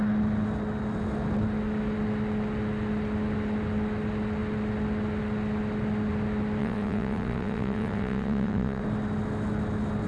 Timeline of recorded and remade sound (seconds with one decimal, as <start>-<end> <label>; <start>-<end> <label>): 0.0-6.6 recorded; 6.6-8.8 remade; 8.8-10.1 recorded